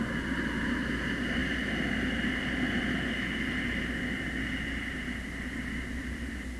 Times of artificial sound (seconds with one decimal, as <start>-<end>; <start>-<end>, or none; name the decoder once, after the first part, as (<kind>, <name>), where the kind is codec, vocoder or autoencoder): none